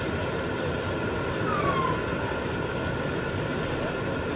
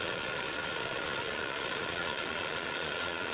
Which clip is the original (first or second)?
first